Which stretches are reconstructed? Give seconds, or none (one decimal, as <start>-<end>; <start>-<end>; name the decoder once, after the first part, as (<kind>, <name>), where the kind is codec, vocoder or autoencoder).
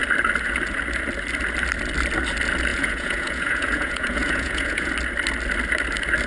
2.7-4.9 (vocoder, Vocos)